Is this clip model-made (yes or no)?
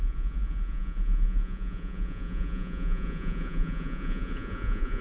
yes